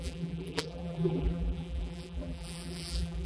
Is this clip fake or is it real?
fake